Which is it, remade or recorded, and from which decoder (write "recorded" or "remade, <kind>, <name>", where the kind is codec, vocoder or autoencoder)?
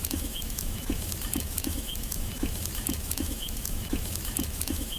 remade, autoencoder, DAC-VAE